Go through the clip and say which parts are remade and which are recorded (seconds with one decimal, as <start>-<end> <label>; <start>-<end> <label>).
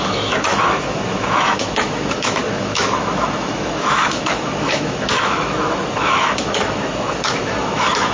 0.0-8.1 remade